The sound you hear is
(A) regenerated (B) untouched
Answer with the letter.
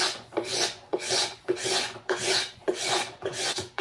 A